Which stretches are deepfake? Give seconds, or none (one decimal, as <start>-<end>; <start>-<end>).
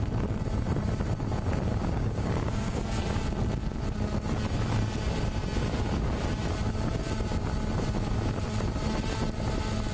1.8-2.8